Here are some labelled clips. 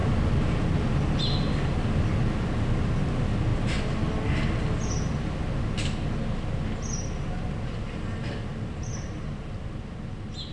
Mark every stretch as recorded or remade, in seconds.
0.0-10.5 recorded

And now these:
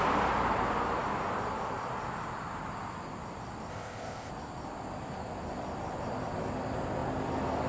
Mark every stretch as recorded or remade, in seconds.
0.0-3.7 recorded; 3.7-4.3 remade; 4.3-7.7 recorded

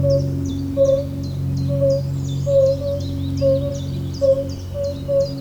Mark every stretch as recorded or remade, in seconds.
0.0-5.4 recorded

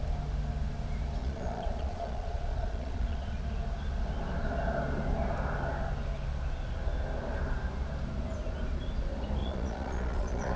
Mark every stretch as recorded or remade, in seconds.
0.0-1.2 recorded; 1.2-3.4 remade; 3.4-9.4 recorded; 9.4-10.6 remade

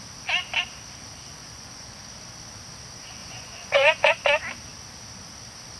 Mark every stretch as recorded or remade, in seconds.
0.0-1.4 recorded; 1.4-2.0 remade; 2.0-3.2 recorded; 3.2-4.1 remade; 4.1-5.8 recorded

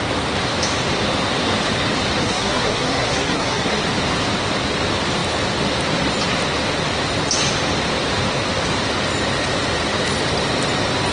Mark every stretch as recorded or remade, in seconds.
0.0-2.2 recorded; 2.2-3.8 remade; 3.8-11.1 recorded